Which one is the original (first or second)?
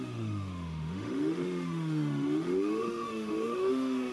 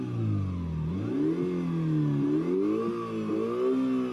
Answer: second